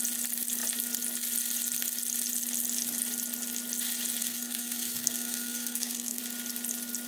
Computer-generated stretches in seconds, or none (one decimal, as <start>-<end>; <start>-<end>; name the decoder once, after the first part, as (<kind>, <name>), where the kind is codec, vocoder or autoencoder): 4.2-6.2 (codec, SNAC)